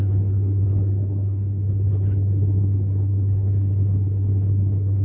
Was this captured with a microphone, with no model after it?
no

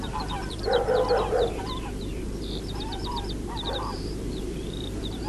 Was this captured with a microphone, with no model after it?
no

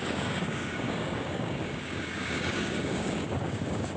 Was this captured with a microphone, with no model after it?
no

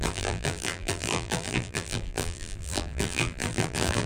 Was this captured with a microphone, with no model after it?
no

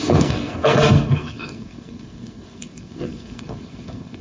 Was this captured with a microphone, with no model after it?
no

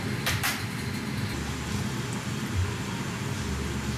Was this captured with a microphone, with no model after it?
yes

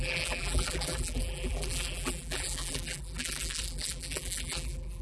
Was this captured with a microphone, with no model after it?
no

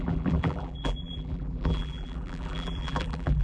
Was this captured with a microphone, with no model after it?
no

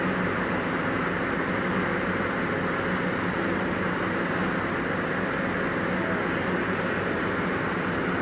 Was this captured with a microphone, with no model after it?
yes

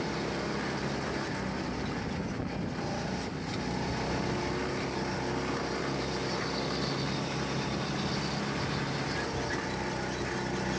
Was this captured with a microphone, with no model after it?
yes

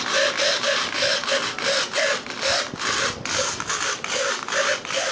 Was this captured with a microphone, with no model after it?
yes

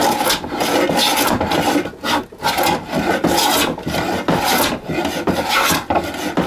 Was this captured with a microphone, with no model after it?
yes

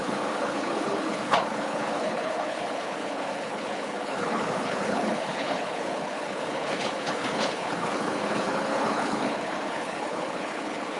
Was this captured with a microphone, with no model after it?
no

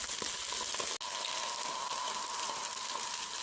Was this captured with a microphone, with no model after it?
yes